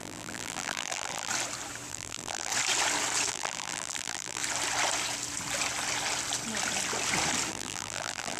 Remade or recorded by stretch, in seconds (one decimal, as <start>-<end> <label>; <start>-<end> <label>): 0.0-1.3 remade; 1.3-1.9 recorded; 1.9-2.5 remade; 2.5-3.3 recorded; 3.3-4.4 remade; 4.4-7.5 recorded; 7.5-8.4 remade